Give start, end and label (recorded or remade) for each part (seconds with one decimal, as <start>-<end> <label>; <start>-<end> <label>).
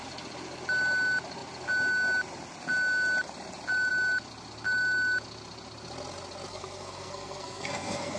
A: 0.0-6.5 recorded; 6.5-8.2 remade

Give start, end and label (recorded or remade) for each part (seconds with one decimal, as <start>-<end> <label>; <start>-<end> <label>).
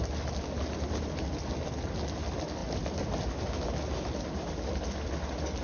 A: 0.0-5.6 recorded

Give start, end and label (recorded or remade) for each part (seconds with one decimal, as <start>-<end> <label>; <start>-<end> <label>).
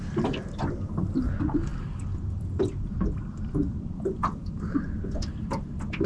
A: 0.0-1.7 recorded; 1.7-4.6 remade; 4.6-6.1 recorded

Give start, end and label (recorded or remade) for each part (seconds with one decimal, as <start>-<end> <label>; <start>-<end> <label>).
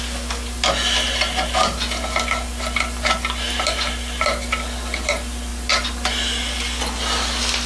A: 0.0-7.7 recorded